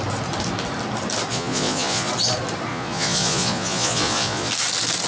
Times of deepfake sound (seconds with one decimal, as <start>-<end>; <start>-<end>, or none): 1.3-2.1; 2.7-4.5